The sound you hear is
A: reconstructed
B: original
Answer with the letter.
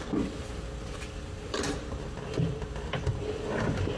B